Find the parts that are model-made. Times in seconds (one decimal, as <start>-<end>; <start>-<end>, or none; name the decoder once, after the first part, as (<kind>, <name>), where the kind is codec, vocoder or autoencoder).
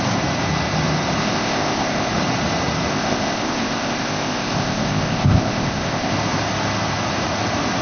1.2-2.1 (codec, ZipCodec); 2.9-6.1